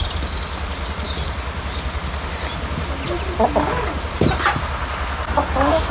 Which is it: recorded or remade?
recorded